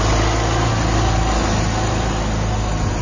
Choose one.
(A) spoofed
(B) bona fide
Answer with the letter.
B